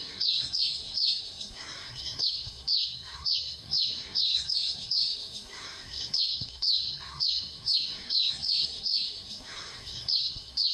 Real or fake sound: fake